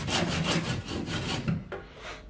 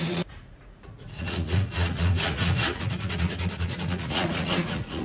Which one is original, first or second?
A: first